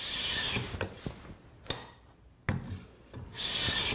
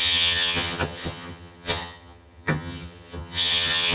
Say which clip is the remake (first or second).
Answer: second